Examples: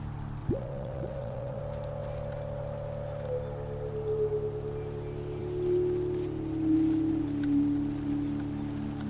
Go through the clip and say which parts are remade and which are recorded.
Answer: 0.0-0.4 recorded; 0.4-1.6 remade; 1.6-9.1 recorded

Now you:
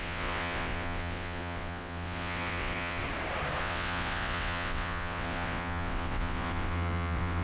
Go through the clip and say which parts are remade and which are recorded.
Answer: 0.0-3.0 remade; 3.0-3.6 recorded; 3.6-7.4 remade

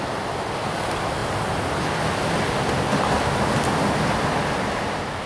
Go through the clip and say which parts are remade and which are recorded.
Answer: 0.0-5.3 recorded

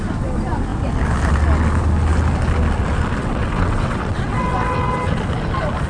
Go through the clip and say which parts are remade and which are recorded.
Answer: 0.0-3.2 recorded; 3.2-5.2 remade; 5.2-5.9 recorded